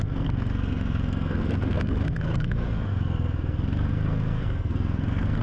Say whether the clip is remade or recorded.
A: remade